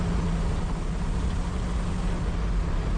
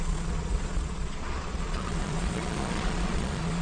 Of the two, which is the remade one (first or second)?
second